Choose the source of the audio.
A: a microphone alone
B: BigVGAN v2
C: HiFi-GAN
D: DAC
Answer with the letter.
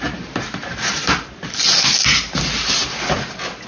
A